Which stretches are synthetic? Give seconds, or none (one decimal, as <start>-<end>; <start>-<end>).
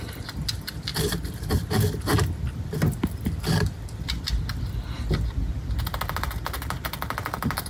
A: none